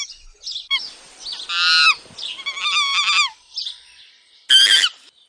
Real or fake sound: real